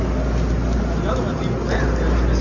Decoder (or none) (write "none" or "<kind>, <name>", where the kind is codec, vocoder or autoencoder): none